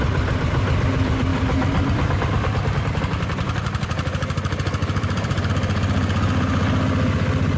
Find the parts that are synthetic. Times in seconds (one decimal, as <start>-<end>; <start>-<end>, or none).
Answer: 1.3-3.0; 4.8-5.5